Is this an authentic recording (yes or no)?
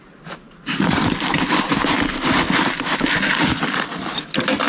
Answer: yes